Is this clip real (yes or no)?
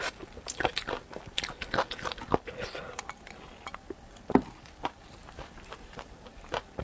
yes